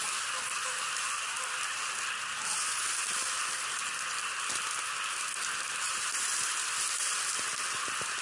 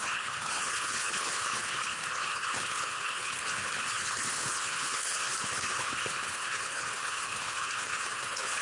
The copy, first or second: second